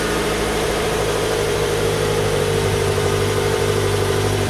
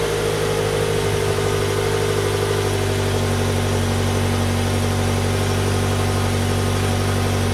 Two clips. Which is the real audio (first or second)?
second